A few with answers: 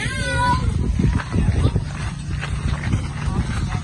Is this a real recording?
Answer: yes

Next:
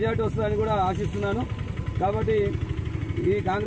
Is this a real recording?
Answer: yes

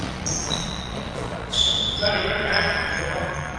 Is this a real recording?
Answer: no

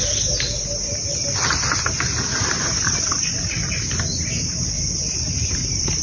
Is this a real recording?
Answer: yes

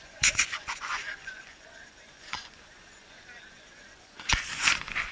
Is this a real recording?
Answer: no